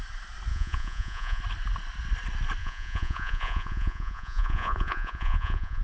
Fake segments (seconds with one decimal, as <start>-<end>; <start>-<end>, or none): 0.5-1.4; 2.6-5.8